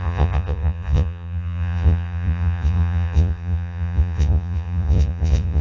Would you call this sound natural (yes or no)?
no